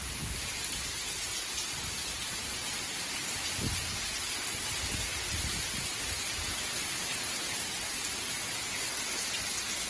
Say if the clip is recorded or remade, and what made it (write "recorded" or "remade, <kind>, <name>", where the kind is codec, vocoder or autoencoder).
recorded